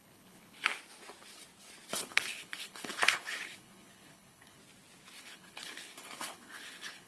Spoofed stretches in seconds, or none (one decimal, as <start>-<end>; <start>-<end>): 0.0-0.7; 1.9-4.6; 5.2-7.1